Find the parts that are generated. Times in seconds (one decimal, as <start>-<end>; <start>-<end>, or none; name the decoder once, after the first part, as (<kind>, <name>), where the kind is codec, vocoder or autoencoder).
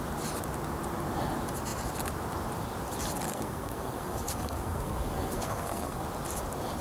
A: 3.3-6.0 (codec, SNAC)